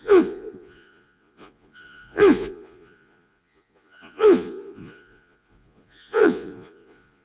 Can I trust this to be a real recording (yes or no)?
no